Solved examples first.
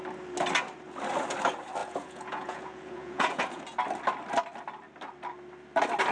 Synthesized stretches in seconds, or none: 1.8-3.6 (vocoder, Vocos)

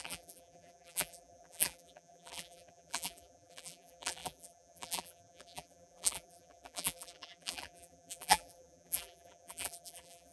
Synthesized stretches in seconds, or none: 0.0-10.3 (vocoder, BigVGAN v2)

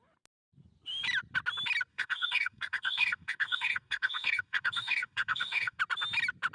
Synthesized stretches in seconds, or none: 1.9-5.8 (codec, DAC)

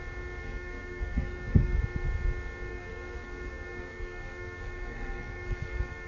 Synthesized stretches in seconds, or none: 0.4-1.8 (codec, SNAC); 2.7-6.1

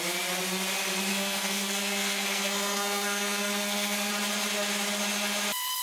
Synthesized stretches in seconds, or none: 1.1-4.1 (codec, SNAC)